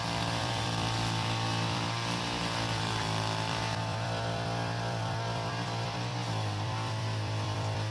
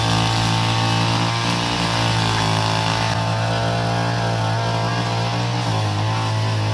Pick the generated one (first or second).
first